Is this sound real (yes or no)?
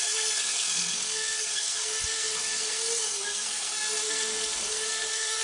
no